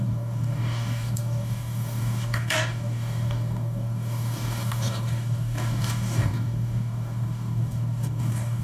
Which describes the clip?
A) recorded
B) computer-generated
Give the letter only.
B